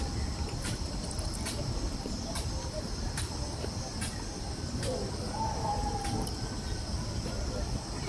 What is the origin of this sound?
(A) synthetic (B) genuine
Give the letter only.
A